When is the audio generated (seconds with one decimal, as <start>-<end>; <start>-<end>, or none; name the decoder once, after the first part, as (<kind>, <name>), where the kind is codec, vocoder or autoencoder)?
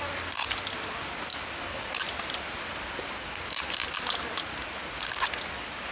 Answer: none